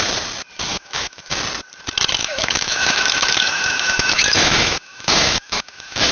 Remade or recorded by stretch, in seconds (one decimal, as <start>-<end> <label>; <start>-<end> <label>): 0.0-0.7 recorded; 0.7-1.4 remade; 1.4-2.2 recorded; 2.2-6.1 remade